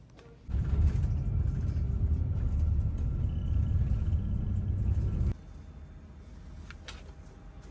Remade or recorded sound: recorded